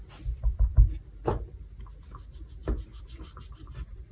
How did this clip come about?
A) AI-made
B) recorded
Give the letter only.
B